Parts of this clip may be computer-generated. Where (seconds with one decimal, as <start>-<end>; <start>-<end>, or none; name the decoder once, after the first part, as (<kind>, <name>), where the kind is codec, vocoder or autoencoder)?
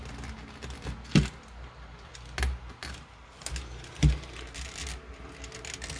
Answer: none